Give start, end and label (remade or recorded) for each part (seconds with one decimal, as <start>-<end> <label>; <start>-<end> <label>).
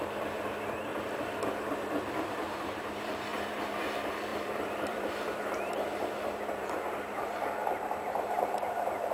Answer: 0.0-0.9 remade; 0.9-2.4 recorded; 2.4-9.1 remade